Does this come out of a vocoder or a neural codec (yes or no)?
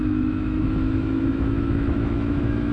yes